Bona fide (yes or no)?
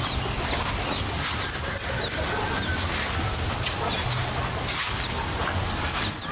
yes